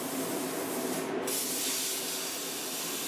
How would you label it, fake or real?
real